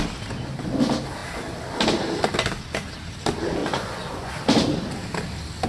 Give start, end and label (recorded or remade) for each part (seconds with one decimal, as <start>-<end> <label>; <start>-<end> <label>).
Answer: 0.0-3.6 recorded; 3.6-4.3 remade; 4.3-5.7 recorded